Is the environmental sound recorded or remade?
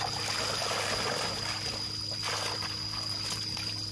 recorded